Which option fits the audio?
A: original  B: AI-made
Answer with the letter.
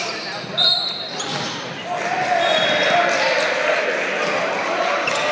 A